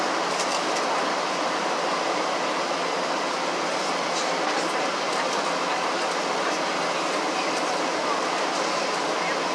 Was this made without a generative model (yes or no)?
yes